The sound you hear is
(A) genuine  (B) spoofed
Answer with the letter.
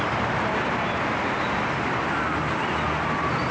A